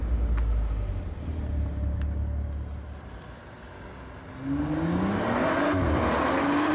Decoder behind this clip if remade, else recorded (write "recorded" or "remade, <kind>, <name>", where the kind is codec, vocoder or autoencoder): recorded